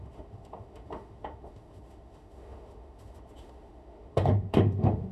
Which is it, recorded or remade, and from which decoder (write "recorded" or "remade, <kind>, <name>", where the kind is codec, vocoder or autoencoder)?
remade, autoencoder, DAC-VAE